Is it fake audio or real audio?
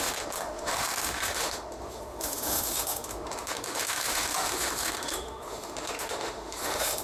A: fake